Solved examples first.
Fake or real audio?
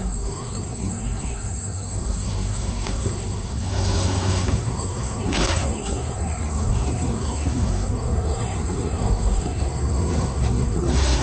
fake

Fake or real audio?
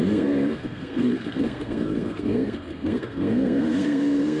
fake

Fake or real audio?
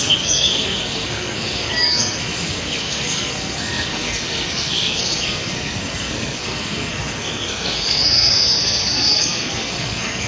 fake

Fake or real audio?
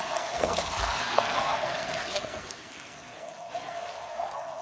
fake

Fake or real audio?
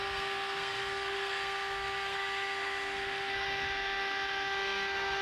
fake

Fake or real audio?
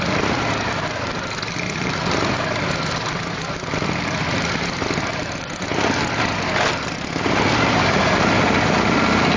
real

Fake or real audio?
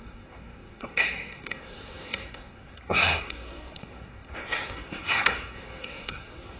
fake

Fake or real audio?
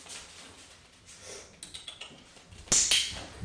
real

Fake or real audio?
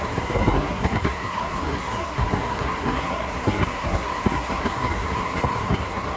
fake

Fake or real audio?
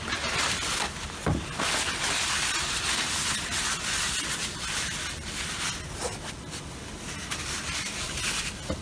real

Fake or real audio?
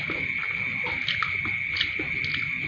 real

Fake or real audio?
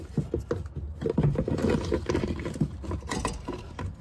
real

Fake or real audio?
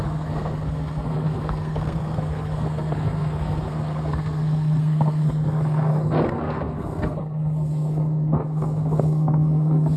fake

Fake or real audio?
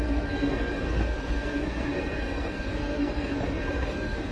fake